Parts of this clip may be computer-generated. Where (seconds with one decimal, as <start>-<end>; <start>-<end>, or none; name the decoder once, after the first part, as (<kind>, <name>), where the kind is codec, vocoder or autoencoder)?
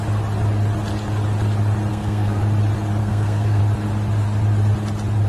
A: 1.9-2.4 (codec, SNAC); 3.0-3.6